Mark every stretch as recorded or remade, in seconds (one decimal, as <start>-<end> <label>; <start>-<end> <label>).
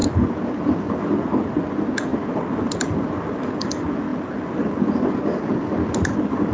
0.0-1.0 remade; 1.0-2.1 recorded; 2.1-3.5 remade; 3.5-4.1 recorded; 4.1-6.5 remade